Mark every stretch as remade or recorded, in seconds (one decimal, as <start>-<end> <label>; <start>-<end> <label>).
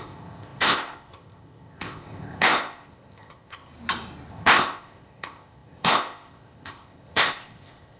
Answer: 0.0-3.7 remade; 3.7-4.3 recorded; 4.3-8.0 remade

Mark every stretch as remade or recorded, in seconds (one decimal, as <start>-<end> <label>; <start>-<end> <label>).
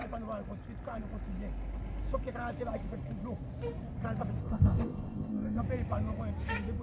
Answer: 0.0-4.4 recorded; 4.4-5.6 remade; 5.6-6.8 recorded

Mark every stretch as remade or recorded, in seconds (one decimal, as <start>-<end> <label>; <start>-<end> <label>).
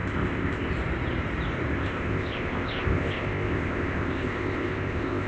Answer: 0.0-0.7 remade; 0.7-1.7 recorded; 1.7-5.3 remade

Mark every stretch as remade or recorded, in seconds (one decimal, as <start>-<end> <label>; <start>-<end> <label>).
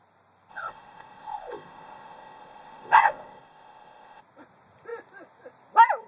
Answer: 0.0-0.5 recorded; 0.5-4.2 remade; 4.2-6.1 recorded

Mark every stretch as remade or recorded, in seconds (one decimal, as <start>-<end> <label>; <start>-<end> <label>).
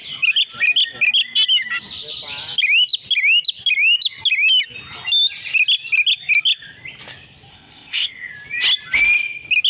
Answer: 0.0-7.5 recorded; 7.5-8.3 remade; 8.3-9.7 recorded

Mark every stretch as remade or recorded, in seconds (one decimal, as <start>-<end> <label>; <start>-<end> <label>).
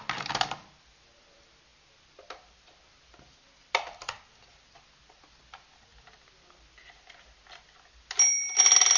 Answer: 0.0-9.0 recorded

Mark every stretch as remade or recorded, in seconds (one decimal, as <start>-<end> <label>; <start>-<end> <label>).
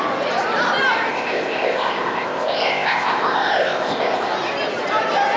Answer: 0.0-1.1 recorded; 1.1-4.3 remade; 4.3-5.4 recorded